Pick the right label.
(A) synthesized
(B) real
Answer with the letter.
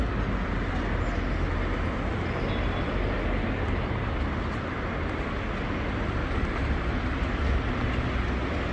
B